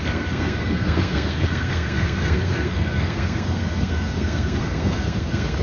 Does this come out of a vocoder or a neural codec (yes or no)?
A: yes